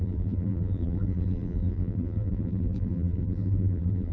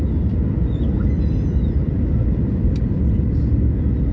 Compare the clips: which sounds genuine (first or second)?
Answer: second